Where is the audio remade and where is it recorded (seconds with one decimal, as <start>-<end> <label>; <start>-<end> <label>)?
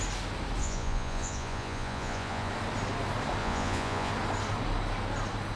0.0-0.6 recorded; 0.6-2.5 remade; 2.5-3.4 recorded; 3.4-4.1 remade; 4.1-5.6 recorded